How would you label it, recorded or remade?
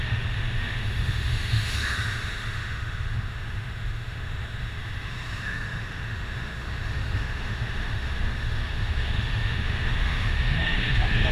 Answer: remade